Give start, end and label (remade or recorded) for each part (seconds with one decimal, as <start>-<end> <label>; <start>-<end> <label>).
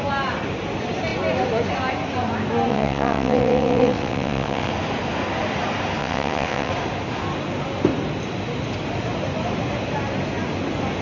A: 0.0-2.7 recorded; 2.7-4.7 remade; 4.7-6.0 recorded; 6.0-6.7 remade; 6.7-11.0 recorded